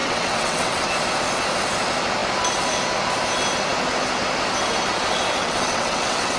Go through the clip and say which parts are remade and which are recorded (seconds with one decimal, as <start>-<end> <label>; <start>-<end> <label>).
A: 0.0-0.9 remade; 0.9-5.4 recorded; 5.4-6.4 remade